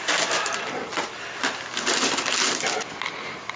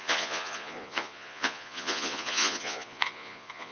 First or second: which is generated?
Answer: second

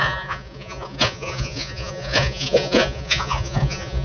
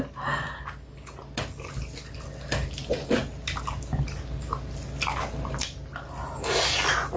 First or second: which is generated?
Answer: first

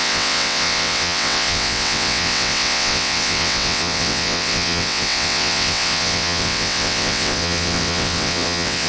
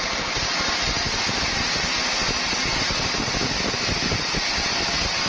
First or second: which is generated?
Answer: first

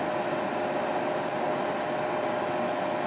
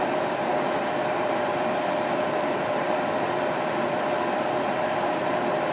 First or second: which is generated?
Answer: second